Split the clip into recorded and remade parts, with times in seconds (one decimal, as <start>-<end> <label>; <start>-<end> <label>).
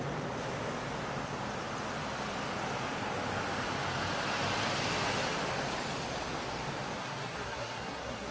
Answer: 0.0-7.0 recorded; 7.0-8.3 remade